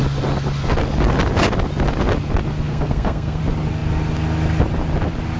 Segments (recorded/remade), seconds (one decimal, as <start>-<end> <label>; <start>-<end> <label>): 0.0-2.7 recorded; 2.7-3.4 remade; 3.4-5.4 recorded

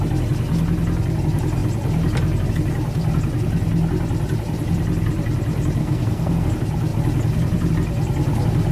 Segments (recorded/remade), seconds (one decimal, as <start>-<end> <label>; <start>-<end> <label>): 0.0-5.8 recorded; 5.8-6.5 remade; 6.5-8.7 recorded

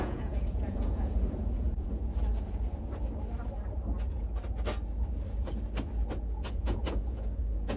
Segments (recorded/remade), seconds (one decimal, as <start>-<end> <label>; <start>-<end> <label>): 0.0-2.0 remade; 2.0-6.5 recorded; 6.5-7.8 remade

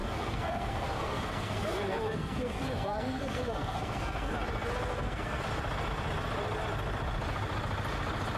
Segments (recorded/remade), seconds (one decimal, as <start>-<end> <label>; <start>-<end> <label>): 0.0-4.3 remade; 4.3-4.9 recorded; 4.9-5.4 remade; 5.4-8.4 recorded